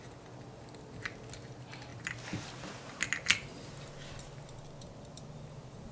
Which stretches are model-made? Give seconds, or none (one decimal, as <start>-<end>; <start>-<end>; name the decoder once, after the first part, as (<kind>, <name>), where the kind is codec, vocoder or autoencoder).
none